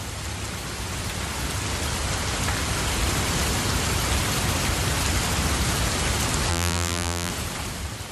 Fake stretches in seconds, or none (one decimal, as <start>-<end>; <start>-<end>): 6.5-7.3